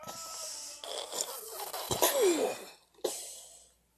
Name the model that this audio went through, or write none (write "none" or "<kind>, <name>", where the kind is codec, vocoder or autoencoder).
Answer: none